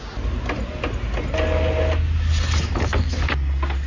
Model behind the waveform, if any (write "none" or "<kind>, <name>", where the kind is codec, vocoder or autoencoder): none